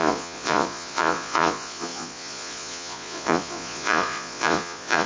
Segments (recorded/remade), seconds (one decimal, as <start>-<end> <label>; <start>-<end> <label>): 0.0-5.1 remade